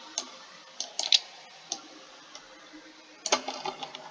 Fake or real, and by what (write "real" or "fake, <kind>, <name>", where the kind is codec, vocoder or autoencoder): real